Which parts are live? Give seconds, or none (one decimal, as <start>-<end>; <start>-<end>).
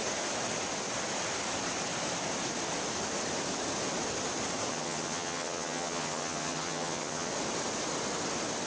0.0-4.7; 7.3-8.7